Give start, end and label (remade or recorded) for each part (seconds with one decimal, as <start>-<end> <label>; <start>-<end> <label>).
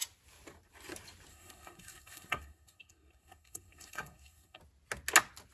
0.0-1.3 recorded; 1.3-4.6 remade; 4.6-5.5 recorded